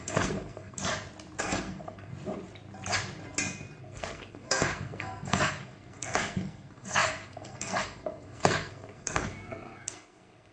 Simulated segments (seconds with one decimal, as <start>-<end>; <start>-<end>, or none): 0.0-0.8; 1.4-2.1; 3.8-10.5